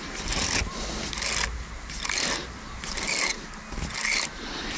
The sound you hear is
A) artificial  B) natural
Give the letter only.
B